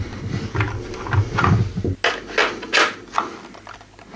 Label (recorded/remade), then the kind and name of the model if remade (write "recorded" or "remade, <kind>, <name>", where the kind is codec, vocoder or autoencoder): recorded